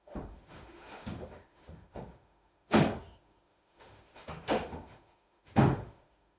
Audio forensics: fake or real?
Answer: fake